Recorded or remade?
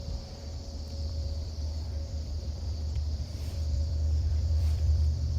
remade